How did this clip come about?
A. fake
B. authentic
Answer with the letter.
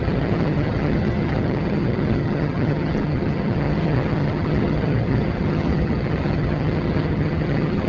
A